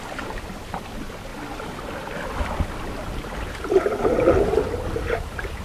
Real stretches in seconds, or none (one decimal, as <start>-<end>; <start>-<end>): 0.0-5.6